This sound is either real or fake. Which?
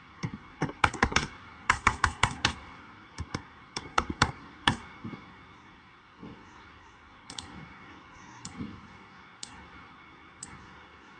fake